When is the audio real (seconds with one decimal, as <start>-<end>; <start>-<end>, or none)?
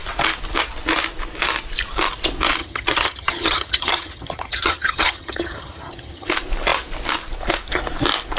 0.0-2.6; 6.3-8.4